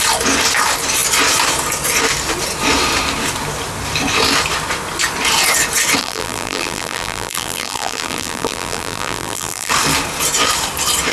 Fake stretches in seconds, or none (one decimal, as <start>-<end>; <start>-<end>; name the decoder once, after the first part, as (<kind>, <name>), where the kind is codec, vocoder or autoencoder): 6.0-9.7 (vocoder, BigVGAN v2)